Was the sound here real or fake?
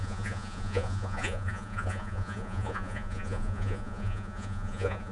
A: fake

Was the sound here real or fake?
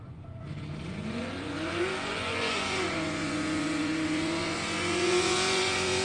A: fake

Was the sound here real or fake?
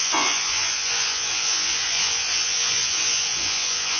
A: fake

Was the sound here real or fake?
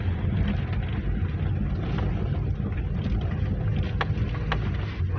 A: real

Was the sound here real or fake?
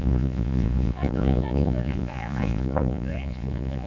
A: fake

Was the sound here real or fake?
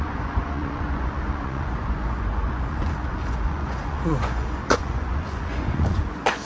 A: fake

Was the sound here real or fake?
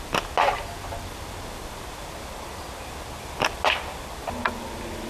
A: real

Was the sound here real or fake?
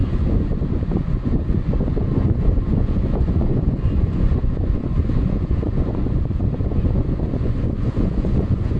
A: fake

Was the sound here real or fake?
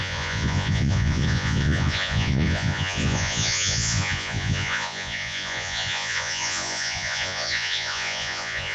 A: fake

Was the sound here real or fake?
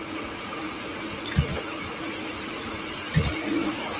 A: fake